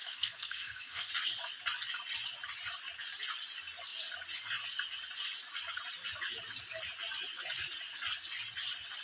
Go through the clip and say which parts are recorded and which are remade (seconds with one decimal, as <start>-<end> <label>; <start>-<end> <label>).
0.0-1.1 remade; 1.1-9.0 recorded